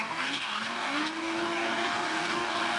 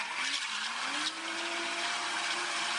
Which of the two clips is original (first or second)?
second